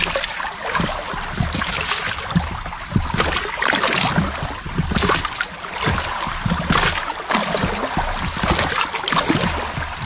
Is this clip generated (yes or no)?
no